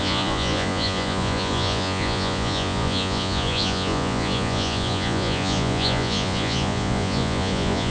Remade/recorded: remade